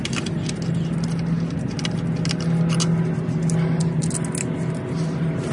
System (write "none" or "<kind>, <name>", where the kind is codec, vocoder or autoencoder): none